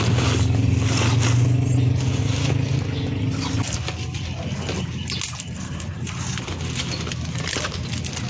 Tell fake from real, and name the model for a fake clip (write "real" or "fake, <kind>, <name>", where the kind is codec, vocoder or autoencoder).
real